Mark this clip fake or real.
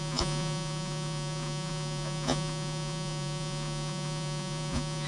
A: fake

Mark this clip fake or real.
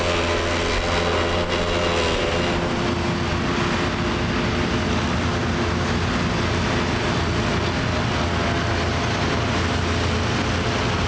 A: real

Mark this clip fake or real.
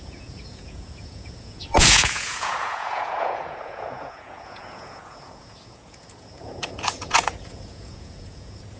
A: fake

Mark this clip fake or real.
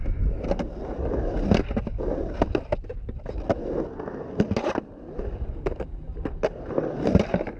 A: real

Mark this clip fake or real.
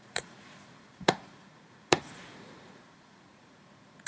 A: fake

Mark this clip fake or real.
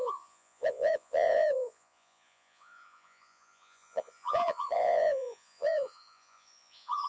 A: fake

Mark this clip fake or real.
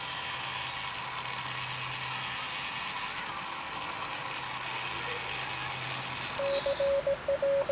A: real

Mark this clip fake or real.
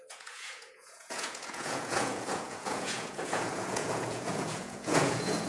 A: fake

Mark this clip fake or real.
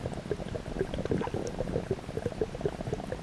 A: real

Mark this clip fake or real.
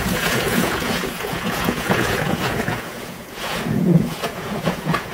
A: fake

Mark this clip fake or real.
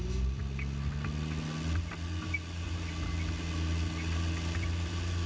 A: real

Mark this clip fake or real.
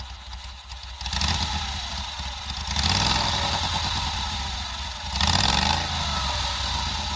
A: real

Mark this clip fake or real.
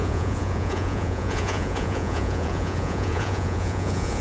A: fake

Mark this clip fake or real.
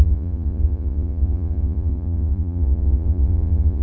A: fake